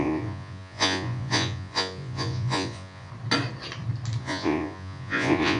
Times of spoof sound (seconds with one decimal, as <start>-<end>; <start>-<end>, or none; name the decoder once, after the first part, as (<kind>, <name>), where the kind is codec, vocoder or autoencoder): 0.0-3.1 (vocoder, Vocos); 4.2-5.6